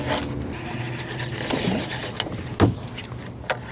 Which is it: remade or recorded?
recorded